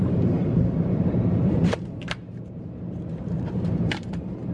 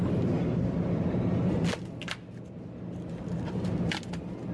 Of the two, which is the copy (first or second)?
first